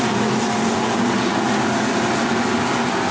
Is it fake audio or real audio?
real